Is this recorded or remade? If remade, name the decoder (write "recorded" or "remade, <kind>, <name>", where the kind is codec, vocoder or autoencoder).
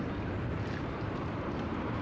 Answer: remade, vocoder, BigVGAN v2